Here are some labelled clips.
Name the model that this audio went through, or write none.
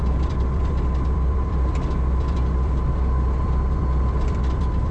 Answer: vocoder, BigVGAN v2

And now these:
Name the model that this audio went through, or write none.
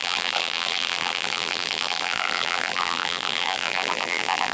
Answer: vocoder, BigVGAN v2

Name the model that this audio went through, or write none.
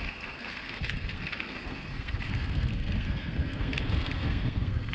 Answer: codec, SNAC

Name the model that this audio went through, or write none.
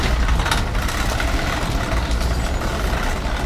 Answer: none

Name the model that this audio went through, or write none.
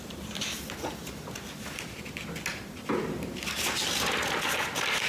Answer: none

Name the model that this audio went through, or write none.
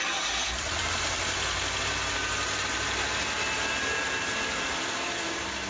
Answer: none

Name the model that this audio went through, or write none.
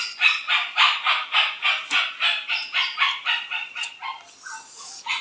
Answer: none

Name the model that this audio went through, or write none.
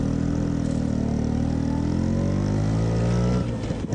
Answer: none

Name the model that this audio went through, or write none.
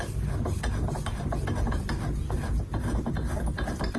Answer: none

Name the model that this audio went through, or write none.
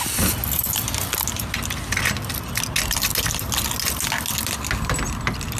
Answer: none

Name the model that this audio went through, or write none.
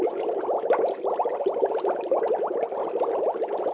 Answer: none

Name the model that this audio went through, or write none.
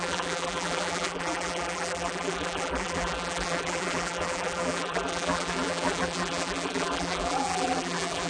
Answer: vocoder, BigVGAN v2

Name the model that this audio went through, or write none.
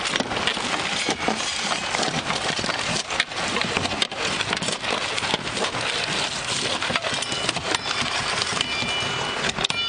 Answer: none